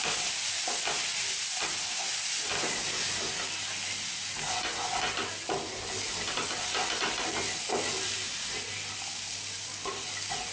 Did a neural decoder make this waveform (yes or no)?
no